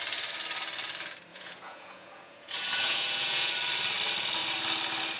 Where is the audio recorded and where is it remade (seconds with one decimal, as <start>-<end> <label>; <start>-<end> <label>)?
0.0-1.3 recorded; 1.3-3.5 remade; 3.5-5.2 recorded